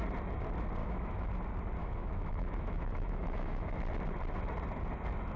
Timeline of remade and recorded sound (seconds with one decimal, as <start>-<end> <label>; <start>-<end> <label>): 0.0-0.8 recorded; 0.8-1.3 remade; 1.3-1.8 recorded; 1.8-3.7 remade; 3.7-5.4 recorded